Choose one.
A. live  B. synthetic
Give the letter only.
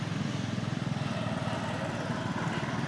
A